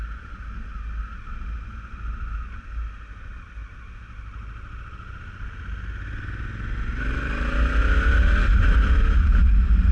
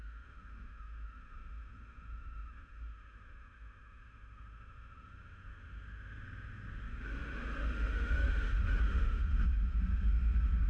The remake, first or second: second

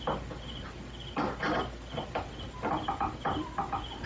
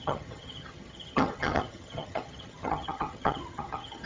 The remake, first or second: second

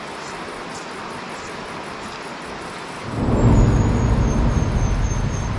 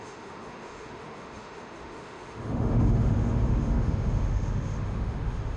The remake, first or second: second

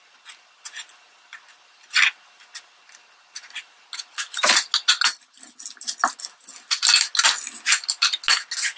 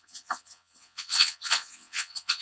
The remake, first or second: second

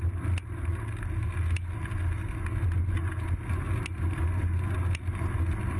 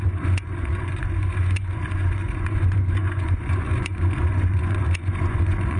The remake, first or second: second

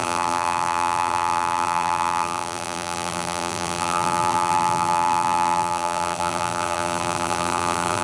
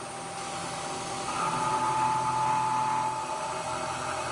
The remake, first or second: first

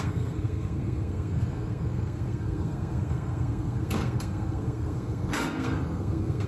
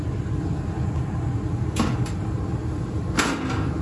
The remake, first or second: first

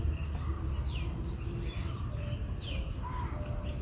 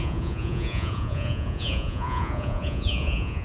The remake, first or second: second